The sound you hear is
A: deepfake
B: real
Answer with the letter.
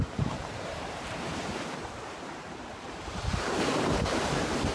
A